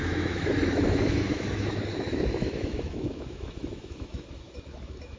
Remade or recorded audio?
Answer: remade